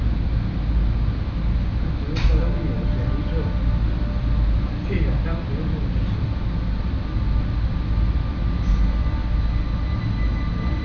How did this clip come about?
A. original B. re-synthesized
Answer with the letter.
A